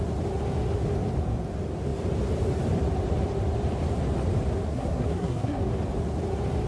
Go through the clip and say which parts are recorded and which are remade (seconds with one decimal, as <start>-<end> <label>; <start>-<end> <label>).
0.0-4.7 recorded; 4.7-5.6 remade; 5.6-6.7 recorded